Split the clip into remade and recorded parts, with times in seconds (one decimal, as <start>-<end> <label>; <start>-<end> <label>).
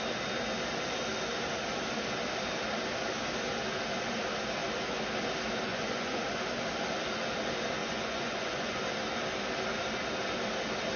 0.0-5.7 recorded; 5.7-6.2 remade; 6.2-7.8 recorded; 7.8-8.8 remade; 8.8-11.0 recorded